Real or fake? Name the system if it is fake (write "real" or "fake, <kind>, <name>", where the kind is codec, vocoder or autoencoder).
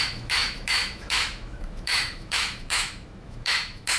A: fake, autoencoder, DAC-VAE